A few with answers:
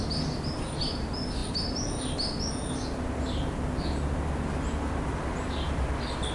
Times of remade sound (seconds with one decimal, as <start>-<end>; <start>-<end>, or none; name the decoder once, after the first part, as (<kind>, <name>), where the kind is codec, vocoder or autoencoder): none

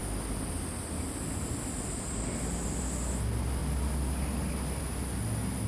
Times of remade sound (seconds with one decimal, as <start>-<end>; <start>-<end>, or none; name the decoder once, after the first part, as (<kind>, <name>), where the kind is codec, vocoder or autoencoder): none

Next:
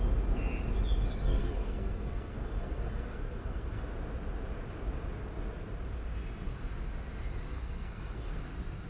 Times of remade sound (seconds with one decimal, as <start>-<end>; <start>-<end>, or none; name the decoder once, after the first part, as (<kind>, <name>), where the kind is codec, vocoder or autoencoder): 1.1-3.8 (codec, SNAC); 7.5-8.4